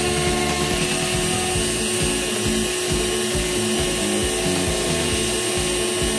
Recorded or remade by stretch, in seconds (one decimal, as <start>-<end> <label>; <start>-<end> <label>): 0.0-6.2 recorded